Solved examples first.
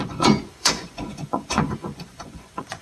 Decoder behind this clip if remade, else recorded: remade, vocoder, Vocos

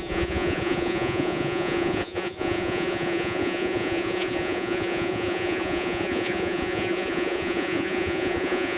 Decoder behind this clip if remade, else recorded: remade, vocoder, Vocos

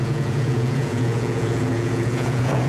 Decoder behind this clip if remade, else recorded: remade, vocoder, Vocos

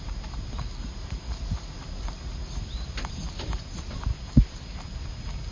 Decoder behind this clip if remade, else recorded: recorded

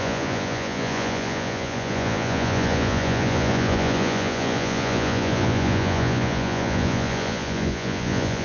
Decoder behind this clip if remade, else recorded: remade, vocoder, Vocos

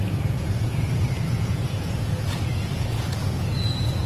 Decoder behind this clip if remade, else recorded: remade, vocoder, Vocos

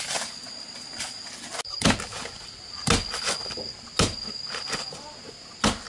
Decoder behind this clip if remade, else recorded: recorded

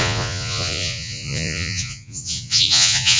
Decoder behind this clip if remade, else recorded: remade, vocoder, Vocos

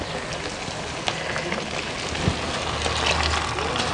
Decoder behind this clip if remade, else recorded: recorded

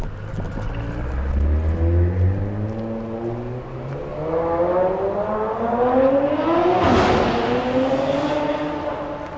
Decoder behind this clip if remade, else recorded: recorded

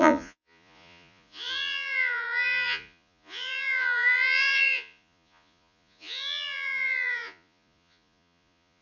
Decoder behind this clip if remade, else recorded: remade, vocoder, Vocos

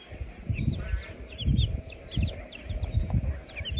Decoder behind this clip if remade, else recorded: recorded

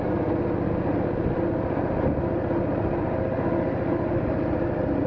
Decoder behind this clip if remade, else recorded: recorded